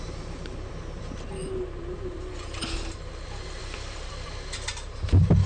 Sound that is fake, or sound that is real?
real